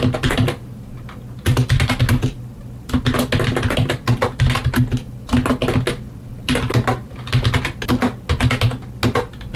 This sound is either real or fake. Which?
real